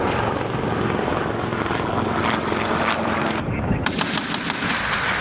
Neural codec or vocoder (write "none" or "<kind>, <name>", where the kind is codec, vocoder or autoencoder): vocoder, BigVGAN v2